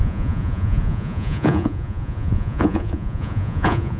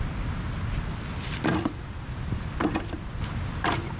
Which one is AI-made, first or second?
first